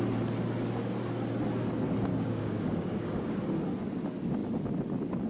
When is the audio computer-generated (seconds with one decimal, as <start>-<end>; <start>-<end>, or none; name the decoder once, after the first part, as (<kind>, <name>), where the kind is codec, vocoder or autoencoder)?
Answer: 2.1-3.3 (codec, DAC)